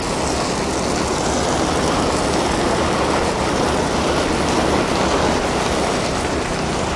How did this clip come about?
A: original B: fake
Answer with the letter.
A